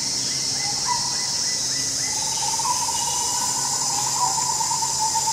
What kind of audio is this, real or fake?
real